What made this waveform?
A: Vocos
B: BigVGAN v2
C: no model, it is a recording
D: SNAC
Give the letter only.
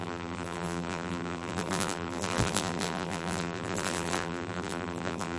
B